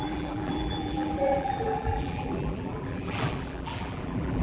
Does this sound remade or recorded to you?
remade